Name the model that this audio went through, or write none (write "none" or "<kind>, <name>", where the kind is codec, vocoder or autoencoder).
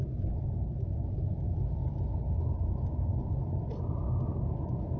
none